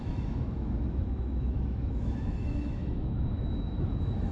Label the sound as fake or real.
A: fake